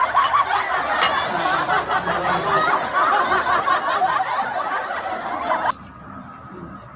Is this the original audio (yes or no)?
yes